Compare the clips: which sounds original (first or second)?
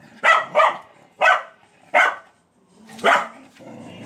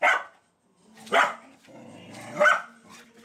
second